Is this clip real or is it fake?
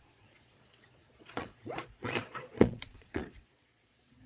fake